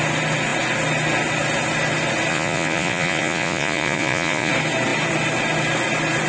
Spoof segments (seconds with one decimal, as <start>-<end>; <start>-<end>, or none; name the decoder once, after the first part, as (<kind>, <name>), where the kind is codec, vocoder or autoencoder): 2.3-4.5 (vocoder, Vocos)